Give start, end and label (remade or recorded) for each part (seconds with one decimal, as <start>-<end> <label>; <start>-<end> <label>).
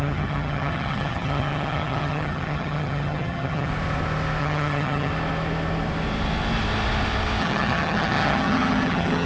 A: 0.0-3.7 remade; 3.7-4.4 recorded; 4.4-5.1 remade; 5.1-7.4 recorded; 7.4-9.3 remade